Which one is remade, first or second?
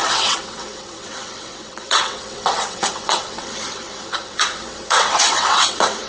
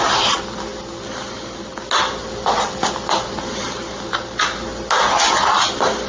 first